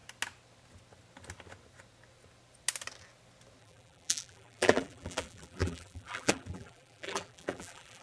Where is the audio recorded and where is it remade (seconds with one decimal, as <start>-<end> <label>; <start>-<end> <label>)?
0.0-3.6 recorded; 3.6-8.0 remade